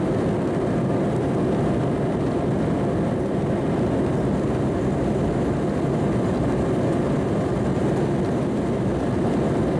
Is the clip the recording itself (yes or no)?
yes